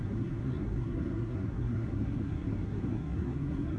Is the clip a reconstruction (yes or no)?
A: yes